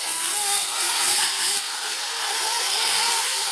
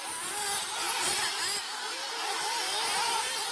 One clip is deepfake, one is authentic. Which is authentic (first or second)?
second